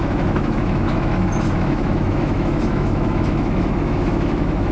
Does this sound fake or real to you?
fake